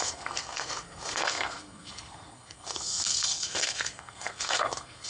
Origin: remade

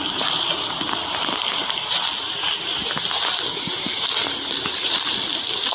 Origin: recorded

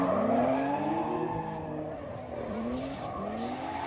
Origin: recorded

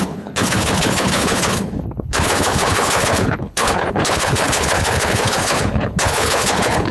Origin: remade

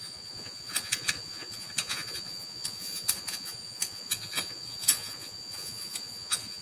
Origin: remade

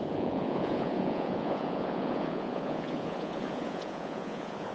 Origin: remade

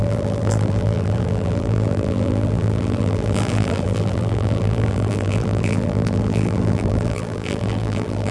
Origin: remade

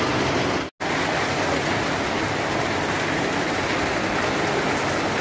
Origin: recorded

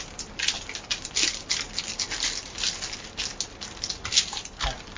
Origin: recorded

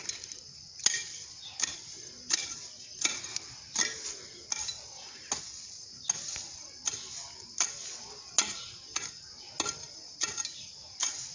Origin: recorded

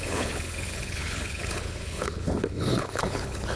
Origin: remade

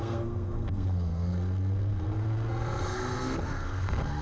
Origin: remade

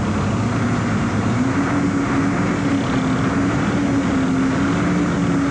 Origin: recorded